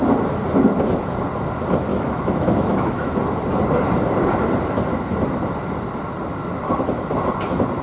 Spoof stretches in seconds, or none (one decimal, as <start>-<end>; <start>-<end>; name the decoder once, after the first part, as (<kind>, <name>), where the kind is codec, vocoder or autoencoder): 1.9-3.1 (autoencoder, DAC-VAE)